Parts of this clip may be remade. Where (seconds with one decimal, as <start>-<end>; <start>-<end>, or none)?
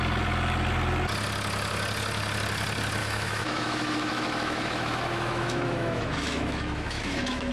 3.0-7.5